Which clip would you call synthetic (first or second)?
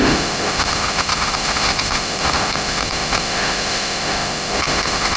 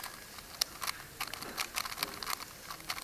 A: first